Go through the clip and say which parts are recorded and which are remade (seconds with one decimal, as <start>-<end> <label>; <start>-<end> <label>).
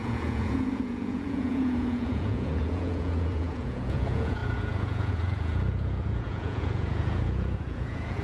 0.0-8.2 remade